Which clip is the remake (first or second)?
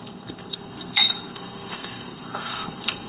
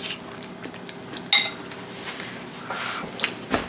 first